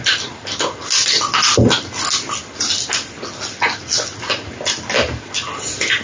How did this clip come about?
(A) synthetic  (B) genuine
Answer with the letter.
B